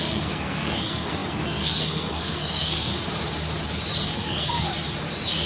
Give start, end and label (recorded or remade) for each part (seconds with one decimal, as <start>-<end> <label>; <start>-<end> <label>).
0.0-2.9 remade; 2.9-4.0 recorded; 4.0-4.7 remade; 4.7-5.5 recorded